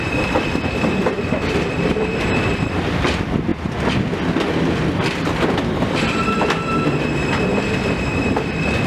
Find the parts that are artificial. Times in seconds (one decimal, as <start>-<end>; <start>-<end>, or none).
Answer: none